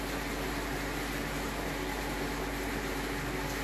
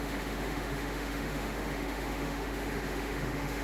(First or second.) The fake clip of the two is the second